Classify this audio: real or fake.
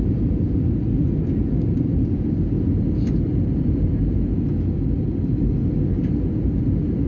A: real